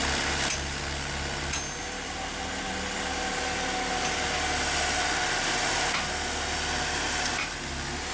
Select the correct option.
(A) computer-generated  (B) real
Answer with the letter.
B